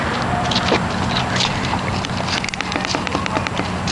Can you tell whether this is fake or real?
fake